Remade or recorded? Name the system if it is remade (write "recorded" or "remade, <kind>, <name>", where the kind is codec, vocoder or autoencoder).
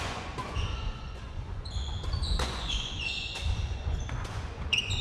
remade, vocoder, Vocos